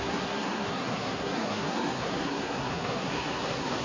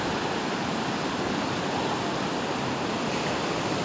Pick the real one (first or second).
second